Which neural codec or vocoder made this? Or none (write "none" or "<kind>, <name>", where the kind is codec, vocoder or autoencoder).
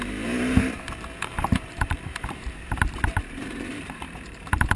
vocoder, BigVGAN v2